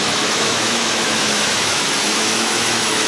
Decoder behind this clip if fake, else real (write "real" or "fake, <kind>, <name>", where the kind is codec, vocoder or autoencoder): fake, autoencoder, DAC-VAE